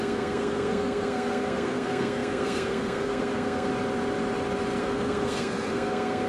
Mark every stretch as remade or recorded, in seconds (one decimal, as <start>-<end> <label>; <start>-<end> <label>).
0.0-3.7 remade; 3.7-4.8 recorded; 4.8-6.3 remade